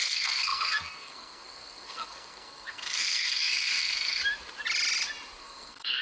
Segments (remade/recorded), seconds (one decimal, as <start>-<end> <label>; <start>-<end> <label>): 0.0-4.2 remade; 4.2-5.4 recorded; 5.4-6.0 remade